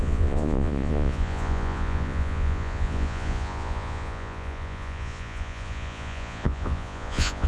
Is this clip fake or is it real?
fake